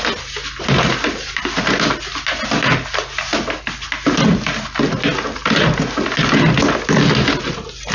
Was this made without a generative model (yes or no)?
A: yes